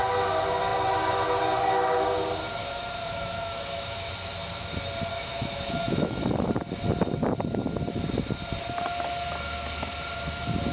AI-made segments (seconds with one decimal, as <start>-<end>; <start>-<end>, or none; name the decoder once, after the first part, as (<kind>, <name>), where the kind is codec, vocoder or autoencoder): 2.6-4.1 (autoencoder, DAC-VAE); 5.1-6.5